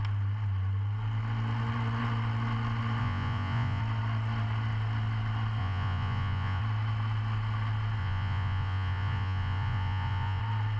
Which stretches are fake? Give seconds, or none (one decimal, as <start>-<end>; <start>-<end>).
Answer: 3.0-3.8; 5.6-6.6; 8.0-10.4